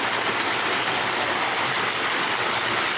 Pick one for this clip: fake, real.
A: fake